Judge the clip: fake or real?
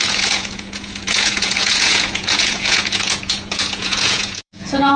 fake